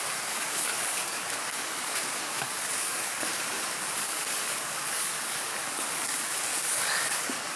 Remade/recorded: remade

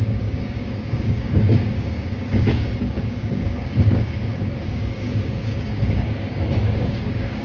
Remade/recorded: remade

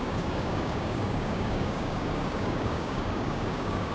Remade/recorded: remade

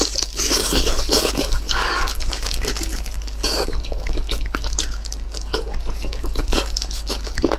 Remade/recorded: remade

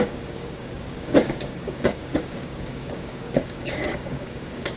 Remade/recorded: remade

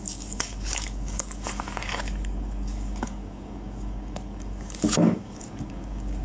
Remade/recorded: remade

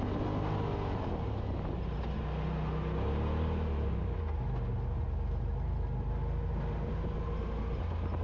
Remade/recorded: recorded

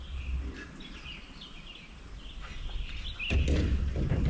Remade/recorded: recorded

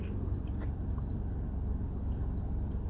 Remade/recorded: recorded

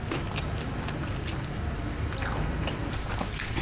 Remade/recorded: recorded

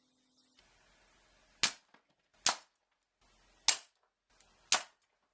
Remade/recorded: recorded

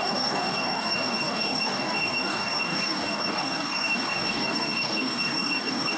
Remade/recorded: remade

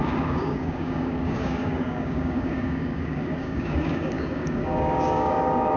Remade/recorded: remade